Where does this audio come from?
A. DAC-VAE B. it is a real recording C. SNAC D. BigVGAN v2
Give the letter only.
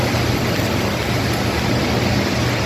B